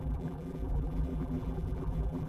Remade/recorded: remade